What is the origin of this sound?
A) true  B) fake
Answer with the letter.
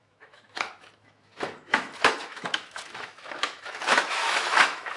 B